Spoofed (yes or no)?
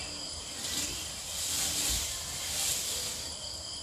yes